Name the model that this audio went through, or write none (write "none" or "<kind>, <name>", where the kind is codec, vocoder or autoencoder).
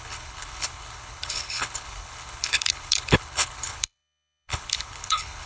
codec, HILCodec